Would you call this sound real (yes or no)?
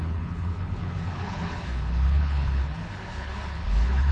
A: no